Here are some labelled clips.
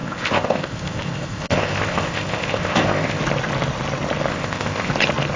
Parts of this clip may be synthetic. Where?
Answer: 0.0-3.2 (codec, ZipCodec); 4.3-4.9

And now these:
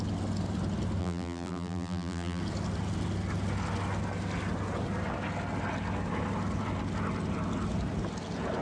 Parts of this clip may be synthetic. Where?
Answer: 1.0-2.4 (vocoder, BigVGAN v2)

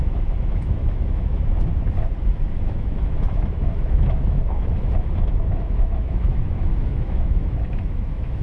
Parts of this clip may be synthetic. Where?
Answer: 0.0-1.7 (autoencoder, DAC-VAE); 2.7-8.4

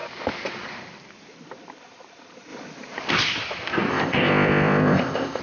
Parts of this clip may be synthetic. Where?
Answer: 3.9-5.4 (codec, ZipCodec)

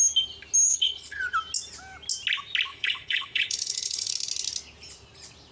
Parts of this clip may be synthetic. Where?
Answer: 0.7-1.2 (codec, HILCodec); 2.7-4.1

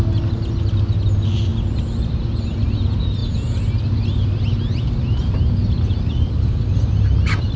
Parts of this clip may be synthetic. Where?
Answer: none